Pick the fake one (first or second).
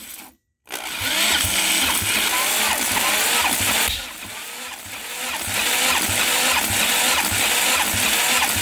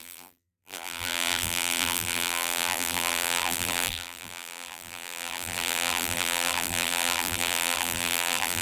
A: second